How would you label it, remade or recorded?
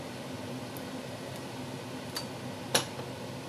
recorded